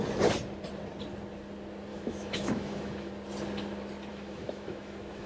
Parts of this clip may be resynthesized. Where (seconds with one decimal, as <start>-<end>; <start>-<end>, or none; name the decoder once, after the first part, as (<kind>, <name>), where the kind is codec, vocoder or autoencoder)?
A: 1.9-3.1 (autoencoder, DAC-VAE); 4.1-5.3